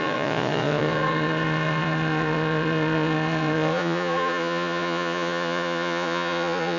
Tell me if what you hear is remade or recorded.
remade